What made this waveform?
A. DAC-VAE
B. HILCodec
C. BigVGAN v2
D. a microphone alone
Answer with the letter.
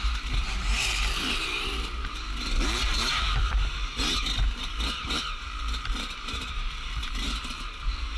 C